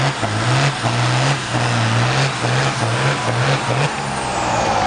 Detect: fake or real real